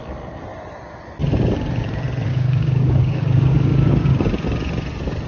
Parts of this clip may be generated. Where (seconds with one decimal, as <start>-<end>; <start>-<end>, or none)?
2.3-4.2